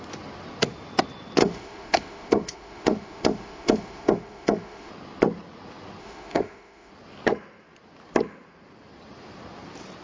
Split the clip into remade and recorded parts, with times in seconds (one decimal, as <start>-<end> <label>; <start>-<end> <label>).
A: 0.0-1.4 recorded; 1.4-4.9 remade; 4.9-6.0 recorded; 6.0-6.9 remade; 6.9-10.0 recorded